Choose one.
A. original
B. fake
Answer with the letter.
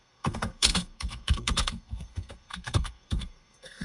B